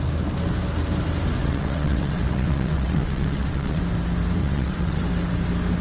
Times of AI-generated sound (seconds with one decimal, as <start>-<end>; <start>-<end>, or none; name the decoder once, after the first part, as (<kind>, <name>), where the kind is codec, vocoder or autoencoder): 1.4-3.8 (vocoder, WaveNeXt); 4.4-5.0